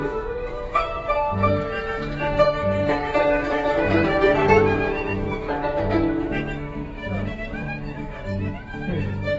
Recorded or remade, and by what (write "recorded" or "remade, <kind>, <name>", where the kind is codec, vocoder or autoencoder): remade, autoencoder, DAC-VAE